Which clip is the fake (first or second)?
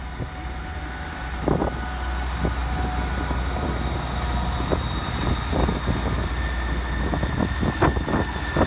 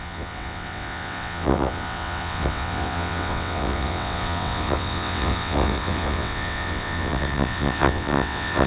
second